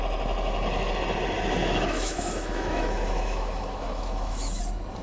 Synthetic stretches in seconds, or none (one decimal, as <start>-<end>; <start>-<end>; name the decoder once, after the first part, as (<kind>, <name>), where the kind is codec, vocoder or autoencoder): 1.6-4.6 (autoencoder, DAC-VAE)

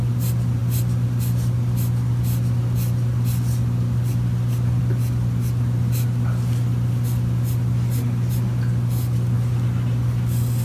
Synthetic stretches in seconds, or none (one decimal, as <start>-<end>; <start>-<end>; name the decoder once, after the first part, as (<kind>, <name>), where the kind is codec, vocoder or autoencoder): none

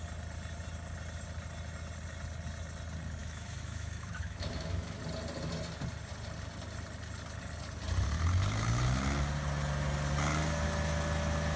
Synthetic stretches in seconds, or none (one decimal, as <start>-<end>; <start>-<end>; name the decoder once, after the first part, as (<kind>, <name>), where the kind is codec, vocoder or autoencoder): 3.2-5.0 (autoencoder, DAC-VAE)

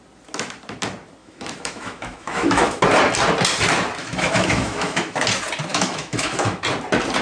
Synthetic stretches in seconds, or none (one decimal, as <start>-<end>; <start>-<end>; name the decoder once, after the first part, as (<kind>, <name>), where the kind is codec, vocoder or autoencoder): 1.2-2.8 (autoencoder, DAC-VAE); 4.0-5.2; 5.7-6.6